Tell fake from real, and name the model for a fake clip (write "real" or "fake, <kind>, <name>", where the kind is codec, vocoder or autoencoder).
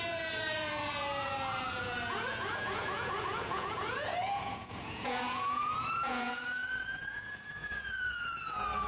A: fake, vocoder, Vocos